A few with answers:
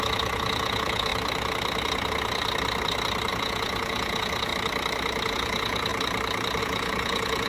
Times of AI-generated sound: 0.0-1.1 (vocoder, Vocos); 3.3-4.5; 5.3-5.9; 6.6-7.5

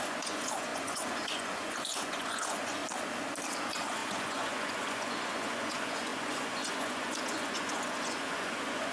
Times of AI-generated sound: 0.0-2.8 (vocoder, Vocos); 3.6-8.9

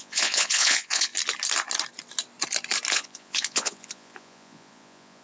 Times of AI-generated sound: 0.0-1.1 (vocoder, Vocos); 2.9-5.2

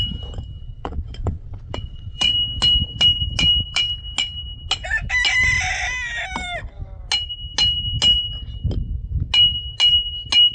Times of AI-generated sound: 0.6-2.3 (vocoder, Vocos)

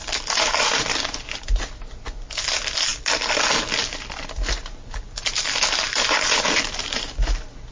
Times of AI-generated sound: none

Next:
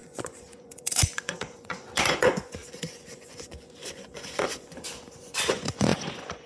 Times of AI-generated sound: 0.0-6.5 (vocoder, Vocos)

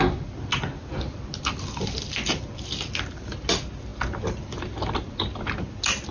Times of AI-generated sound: none

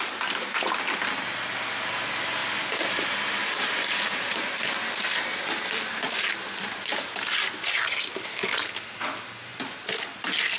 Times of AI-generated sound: none